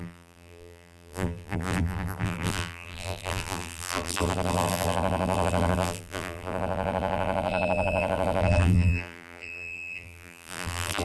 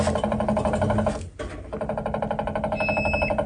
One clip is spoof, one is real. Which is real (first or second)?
second